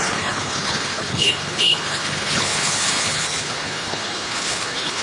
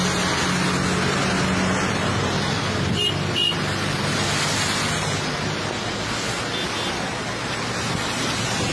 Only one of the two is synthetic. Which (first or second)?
first